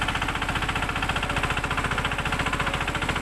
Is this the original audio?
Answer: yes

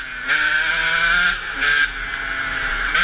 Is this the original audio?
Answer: yes